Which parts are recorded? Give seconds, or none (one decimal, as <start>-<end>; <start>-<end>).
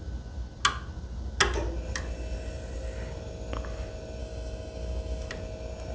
0.0-4.2; 5.3-5.9